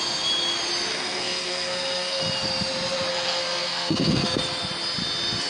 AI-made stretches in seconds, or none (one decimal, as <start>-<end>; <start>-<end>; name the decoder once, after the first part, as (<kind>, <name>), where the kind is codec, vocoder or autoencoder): 0.9-2.2 (codec, SNAC); 3.1-4.4